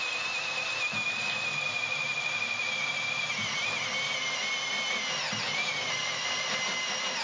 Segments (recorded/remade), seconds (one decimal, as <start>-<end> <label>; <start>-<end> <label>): 0.0-7.2 recorded